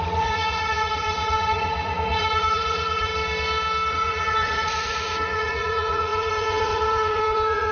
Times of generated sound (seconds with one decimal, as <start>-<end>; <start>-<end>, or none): 0.0-3.1; 3.9-7.7